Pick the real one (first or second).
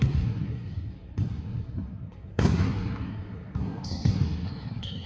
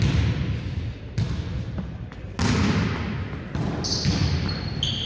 second